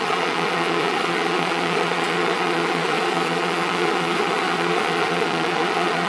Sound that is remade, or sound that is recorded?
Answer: remade